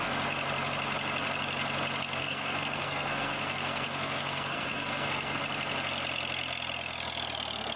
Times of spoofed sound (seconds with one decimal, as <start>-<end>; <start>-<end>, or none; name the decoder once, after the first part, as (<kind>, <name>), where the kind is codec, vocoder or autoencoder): 2.2-5.4 (codec, SNAC)